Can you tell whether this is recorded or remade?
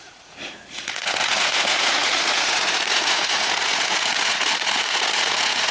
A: remade